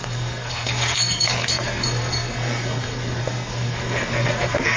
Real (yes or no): no